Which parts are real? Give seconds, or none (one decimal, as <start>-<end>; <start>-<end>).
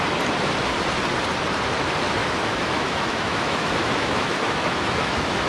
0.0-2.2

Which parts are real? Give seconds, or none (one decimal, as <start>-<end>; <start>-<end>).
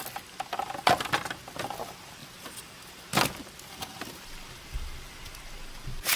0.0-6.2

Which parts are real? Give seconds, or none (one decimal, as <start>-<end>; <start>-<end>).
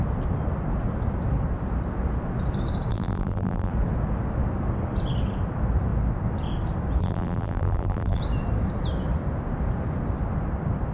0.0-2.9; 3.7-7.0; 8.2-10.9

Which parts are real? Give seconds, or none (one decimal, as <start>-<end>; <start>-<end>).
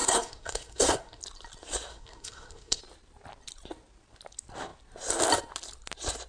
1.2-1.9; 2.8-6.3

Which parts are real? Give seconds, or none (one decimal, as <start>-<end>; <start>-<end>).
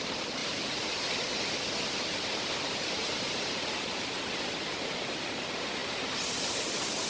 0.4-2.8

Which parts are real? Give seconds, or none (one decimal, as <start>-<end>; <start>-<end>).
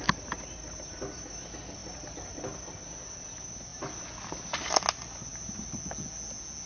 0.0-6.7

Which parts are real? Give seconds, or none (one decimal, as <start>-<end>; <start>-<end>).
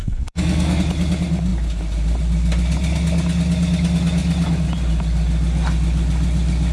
0.8-6.7